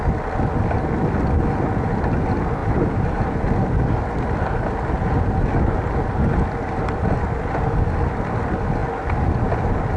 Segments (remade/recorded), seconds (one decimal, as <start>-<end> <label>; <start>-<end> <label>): 0.0-2.6 recorded; 2.6-3.4 remade; 3.4-10.0 recorded